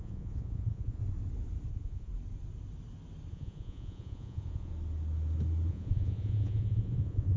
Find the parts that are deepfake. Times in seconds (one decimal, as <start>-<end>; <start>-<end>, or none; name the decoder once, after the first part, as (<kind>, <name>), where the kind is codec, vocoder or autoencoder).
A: 0.0-1.0 (vocoder, Vocos); 1.7-2.1; 3.3-4.7; 5.7-7.4